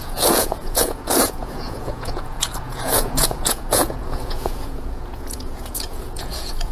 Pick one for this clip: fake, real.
fake